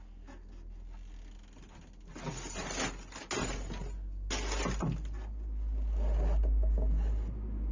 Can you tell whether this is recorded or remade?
recorded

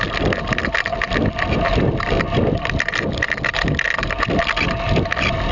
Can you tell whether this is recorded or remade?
recorded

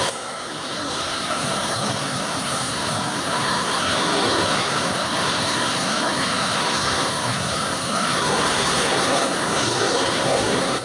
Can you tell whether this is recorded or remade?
remade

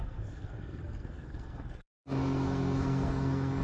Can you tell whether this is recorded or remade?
remade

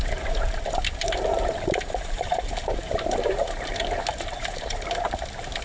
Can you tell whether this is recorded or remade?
remade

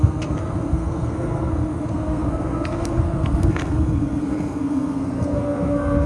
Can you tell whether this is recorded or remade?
remade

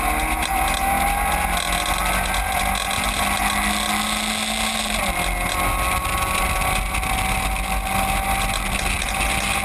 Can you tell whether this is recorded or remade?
recorded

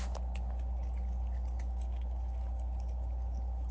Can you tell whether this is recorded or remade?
recorded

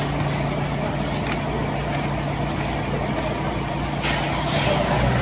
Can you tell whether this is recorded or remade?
recorded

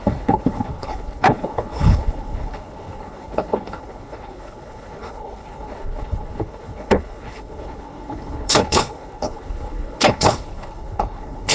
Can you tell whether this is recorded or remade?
remade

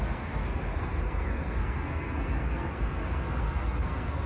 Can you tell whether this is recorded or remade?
remade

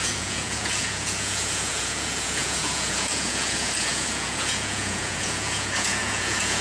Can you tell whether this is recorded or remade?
remade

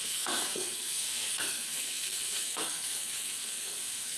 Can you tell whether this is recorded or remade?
remade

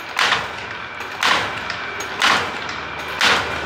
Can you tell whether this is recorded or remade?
recorded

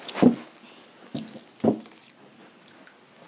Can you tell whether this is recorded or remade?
recorded